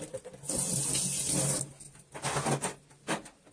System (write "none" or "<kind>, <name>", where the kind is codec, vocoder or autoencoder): none